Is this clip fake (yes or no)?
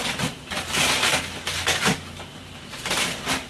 no